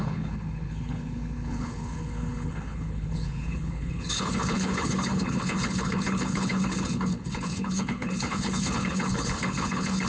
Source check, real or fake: fake